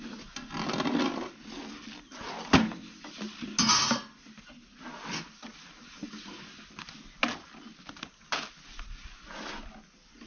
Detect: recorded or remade recorded